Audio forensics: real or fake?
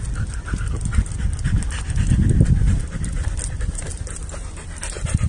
real